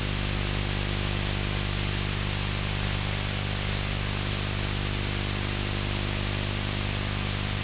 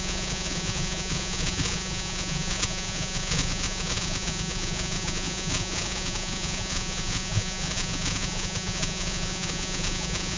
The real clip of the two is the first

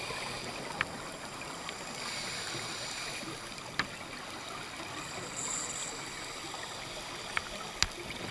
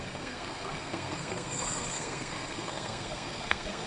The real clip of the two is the first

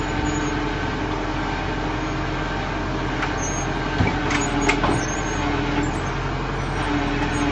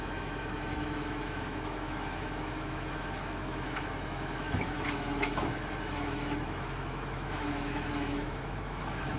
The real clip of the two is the first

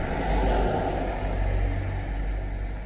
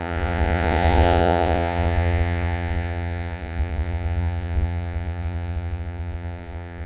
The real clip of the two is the first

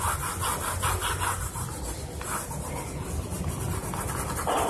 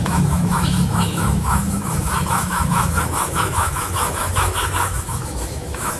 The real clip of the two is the first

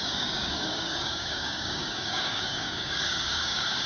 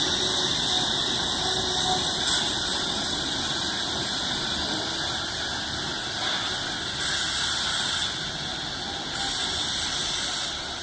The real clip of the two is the second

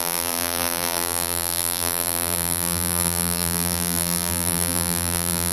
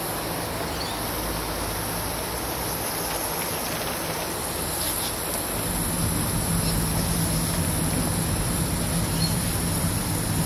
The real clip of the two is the second